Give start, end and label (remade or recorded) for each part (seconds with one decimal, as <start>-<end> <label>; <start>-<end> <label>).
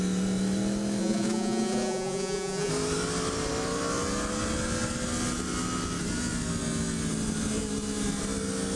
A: 0.0-1.0 recorded; 1.0-2.7 remade; 2.7-8.8 recorded